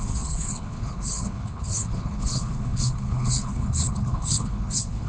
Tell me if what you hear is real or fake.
fake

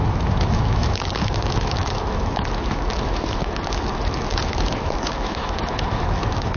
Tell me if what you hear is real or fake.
fake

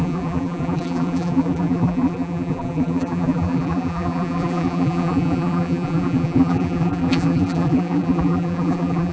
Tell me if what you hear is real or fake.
fake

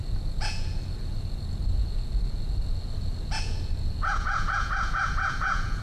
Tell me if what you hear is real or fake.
fake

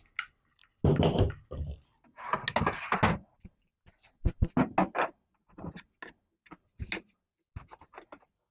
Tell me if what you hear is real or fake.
real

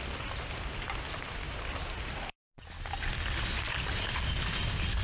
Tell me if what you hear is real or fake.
real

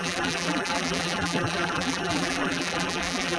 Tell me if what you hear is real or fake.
fake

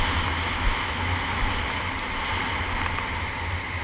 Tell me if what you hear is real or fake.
real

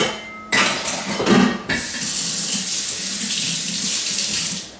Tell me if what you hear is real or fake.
real